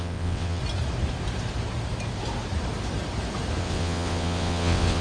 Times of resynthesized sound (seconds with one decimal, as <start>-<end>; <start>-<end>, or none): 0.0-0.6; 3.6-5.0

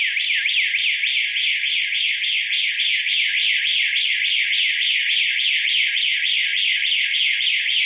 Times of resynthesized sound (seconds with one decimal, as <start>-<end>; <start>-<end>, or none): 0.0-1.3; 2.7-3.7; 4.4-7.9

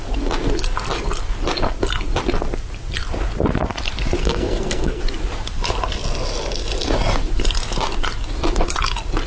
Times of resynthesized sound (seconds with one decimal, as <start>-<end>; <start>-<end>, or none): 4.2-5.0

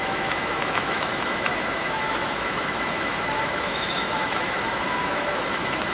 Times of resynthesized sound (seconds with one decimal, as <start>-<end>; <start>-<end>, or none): 0.0-5.9